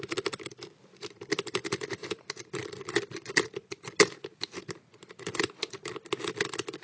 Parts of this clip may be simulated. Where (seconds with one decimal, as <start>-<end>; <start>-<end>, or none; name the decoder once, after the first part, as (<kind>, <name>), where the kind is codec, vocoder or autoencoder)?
none